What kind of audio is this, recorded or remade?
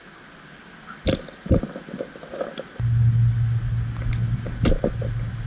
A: recorded